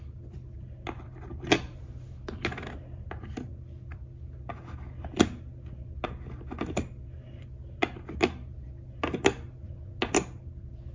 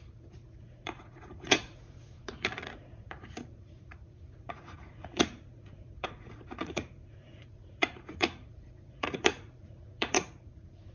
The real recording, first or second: first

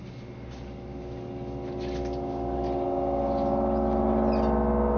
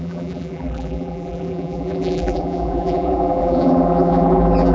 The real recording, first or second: first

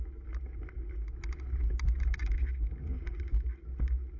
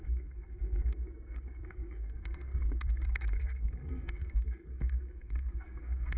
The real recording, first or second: first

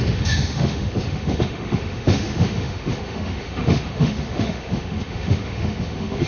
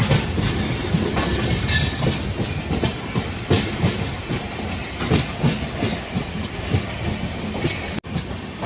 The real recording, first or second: second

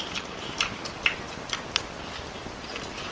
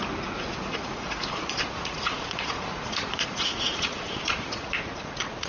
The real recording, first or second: first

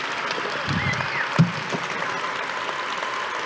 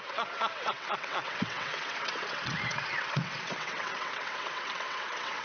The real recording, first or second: first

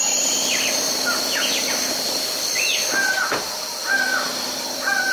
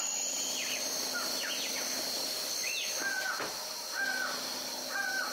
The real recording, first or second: second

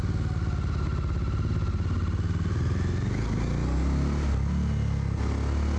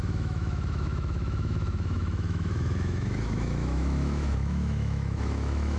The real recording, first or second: first